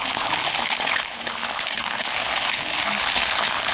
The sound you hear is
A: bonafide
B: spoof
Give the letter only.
B